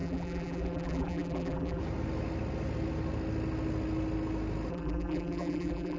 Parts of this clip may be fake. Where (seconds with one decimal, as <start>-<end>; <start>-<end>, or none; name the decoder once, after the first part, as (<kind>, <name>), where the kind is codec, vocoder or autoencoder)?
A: 0.0-1.8 (vocoder, BigVGAN v2); 4.7-6.0